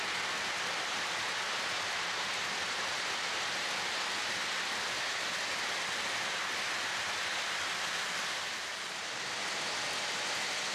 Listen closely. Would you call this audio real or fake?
real